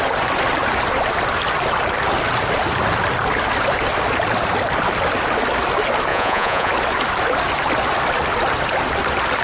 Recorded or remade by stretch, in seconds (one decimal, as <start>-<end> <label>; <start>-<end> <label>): 0.0-6.1 recorded; 6.1-6.7 remade; 6.7-9.4 recorded